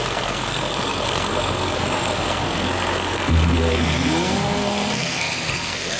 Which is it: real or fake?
fake